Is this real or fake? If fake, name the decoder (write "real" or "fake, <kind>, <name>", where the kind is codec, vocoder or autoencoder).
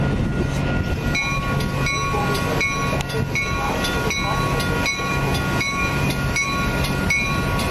real